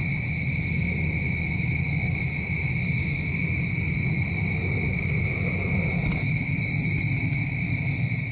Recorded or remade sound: recorded